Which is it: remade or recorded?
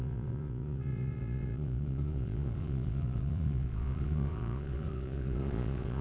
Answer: remade